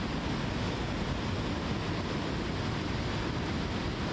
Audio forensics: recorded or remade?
recorded